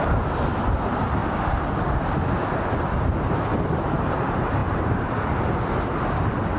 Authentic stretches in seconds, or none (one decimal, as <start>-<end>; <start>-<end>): 0.0-6.6